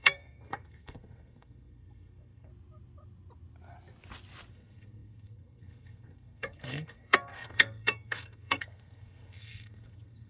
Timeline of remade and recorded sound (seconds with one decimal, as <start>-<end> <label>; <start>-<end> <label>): 0.0-2.5 remade; 2.5-4.5 recorded; 4.5-10.3 remade